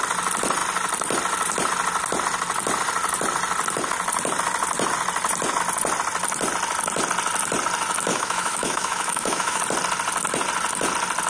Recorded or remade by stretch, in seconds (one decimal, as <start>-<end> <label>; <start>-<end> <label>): 0.0-8.1 recorded; 8.1-9.6 remade; 9.6-11.3 recorded